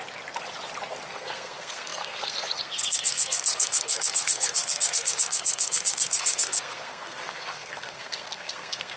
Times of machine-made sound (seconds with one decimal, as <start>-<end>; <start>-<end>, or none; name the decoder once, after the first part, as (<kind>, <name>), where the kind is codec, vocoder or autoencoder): 1.1-9.0 (codec, SNAC)